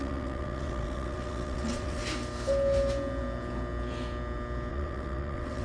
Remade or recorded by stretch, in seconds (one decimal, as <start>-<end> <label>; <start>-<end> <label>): 0.0-2.0 remade; 2.0-4.7 recorded; 4.7-5.6 remade